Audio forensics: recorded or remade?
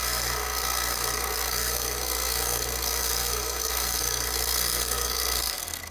remade